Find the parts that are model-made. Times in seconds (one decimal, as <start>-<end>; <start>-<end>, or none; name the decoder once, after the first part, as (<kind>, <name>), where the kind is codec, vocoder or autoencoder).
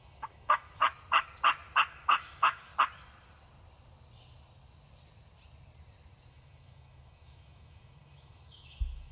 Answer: 0.0-0.8 (autoencoder, DAC-VAE); 1.9-2.7; 6.3-9.1